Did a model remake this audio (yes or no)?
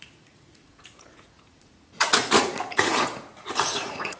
yes